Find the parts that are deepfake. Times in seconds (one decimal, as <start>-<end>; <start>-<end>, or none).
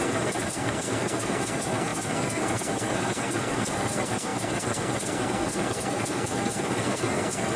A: 0.0-7.6